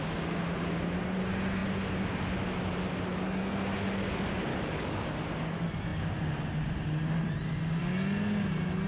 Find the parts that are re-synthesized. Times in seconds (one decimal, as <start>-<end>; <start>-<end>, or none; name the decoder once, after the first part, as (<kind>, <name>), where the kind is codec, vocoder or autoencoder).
4.5-5.1 (codec, DAC)